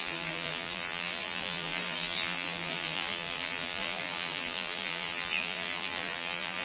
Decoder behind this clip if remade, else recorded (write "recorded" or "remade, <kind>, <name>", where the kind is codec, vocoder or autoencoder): remade, vocoder, BigVGAN v2